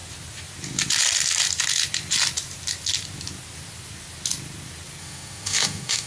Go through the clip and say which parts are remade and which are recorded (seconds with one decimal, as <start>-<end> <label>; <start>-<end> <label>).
0.0-5.0 recorded; 5.0-6.1 remade